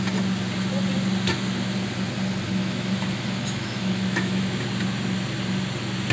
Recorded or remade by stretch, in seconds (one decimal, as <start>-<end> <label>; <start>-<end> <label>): 0.0-2.6 recorded; 2.6-4.6 remade; 4.6-6.1 recorded